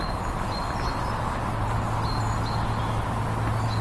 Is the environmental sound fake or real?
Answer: real